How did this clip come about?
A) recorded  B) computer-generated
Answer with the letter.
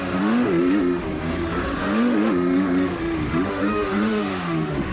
B